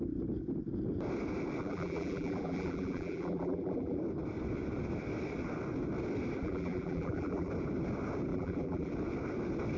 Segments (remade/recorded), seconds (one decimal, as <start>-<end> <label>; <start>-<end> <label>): 0.0-1.6 recorded; 1.6-4.0 remade; 4.0-6.4 recorded; 6.4-7.5 remade; 7.5-8.3 recorded; 8.3-8.9 remade; 8.9-9.8 recorded